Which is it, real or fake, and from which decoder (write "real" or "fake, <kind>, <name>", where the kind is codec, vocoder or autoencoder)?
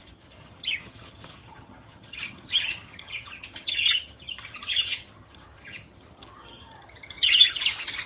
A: fake, vocoder, HiFi-GAN